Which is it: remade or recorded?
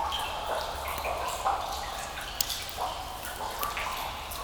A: recorded